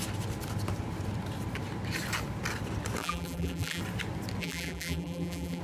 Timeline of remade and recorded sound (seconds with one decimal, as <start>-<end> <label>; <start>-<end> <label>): 0.0-3.0 recorded; 3.0-3.8 remade; 3.8-4.4 recorded; 4.4-5.6 remade